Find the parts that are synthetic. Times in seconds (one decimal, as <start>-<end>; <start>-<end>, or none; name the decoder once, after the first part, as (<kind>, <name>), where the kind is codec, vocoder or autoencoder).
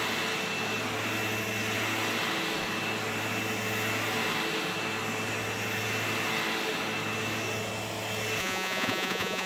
8.4-9.5 (vocoder, Vocos)